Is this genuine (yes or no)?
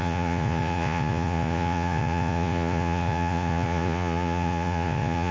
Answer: no